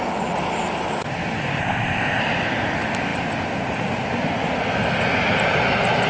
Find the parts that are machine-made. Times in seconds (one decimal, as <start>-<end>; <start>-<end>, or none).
1.6-2.2